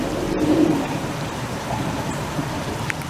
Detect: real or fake fake